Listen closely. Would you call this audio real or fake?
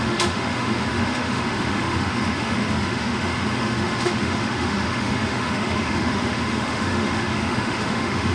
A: fake